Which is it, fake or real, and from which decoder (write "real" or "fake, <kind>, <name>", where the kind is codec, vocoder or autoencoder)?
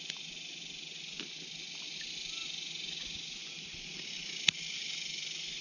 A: real